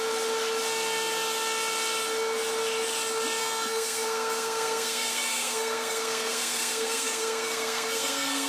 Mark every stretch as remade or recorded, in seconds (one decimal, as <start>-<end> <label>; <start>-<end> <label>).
0.0-3.4 recorded; 3.4-8.5 remade